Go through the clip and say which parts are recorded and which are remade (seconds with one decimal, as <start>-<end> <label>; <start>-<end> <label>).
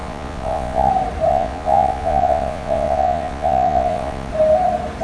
0.0-0.9 remade; 0.9-1.3 recorded; 1.3-4.3 remade; 4.3-5.0 recorded